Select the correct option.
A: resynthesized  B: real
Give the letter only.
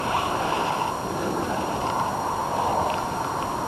B